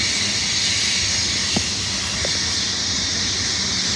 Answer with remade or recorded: recorded